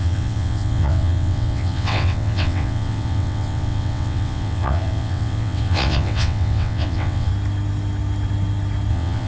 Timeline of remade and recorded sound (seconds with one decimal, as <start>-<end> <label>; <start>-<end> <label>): 0.0-7.3 remade; 7.3-8.9 recorded; 8.9-9.3 remade